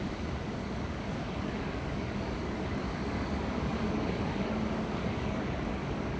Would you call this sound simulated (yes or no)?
yes